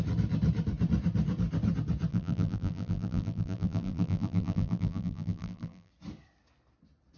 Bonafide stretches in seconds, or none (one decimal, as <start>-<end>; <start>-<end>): 0.0-2.1; 5.9-7.2